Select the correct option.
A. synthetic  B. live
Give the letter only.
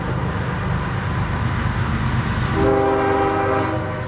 B